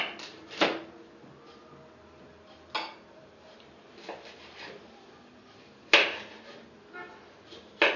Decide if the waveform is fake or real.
real